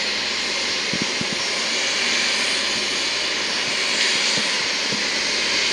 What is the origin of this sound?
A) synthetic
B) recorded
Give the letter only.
B